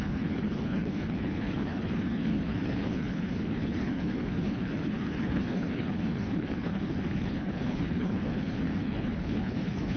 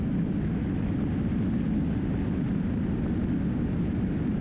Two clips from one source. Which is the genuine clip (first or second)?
second